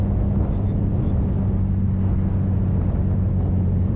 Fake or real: real